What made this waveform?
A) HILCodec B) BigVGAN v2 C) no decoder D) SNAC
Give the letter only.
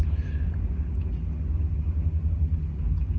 C